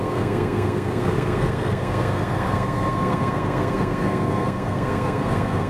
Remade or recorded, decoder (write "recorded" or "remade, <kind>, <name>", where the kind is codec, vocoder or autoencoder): remade, codec, SNAC